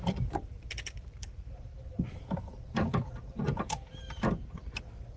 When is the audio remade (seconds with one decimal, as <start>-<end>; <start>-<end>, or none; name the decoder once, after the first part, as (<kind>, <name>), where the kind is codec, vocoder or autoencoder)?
0.0-1.7 (vocoder, BigVGAN v2); 4.8-5.2

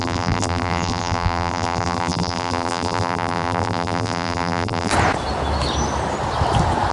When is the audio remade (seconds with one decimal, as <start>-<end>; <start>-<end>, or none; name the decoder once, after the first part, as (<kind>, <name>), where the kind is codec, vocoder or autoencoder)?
0.0-4.9 (vocoder, BigVGAN v2)

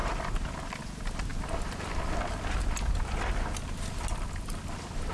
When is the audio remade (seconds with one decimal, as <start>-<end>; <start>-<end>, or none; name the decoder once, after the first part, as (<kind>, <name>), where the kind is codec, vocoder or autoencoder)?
0.0-0.8 (vocoder, BigVGAN v2)

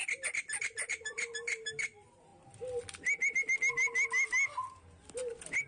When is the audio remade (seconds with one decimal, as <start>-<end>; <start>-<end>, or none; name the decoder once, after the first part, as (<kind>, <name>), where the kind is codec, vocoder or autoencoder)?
0.9-2.3 (vocoder, BigVGAN v2)

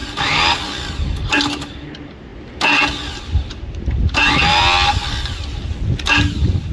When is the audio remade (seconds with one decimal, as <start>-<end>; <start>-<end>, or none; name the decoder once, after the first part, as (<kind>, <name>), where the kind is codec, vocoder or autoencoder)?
none

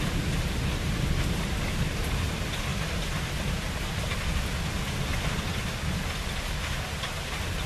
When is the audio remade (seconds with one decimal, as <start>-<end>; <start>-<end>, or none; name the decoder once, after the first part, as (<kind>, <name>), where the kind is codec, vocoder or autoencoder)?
0.0-2.7 (vocoder, BigVGAN v2); 6.7-7.7